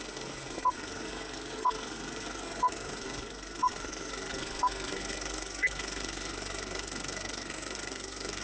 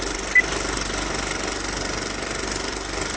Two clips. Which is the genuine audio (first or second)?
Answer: second